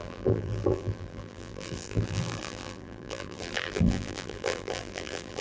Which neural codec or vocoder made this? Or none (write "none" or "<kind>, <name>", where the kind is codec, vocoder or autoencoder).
vocoder, BigVGAN v2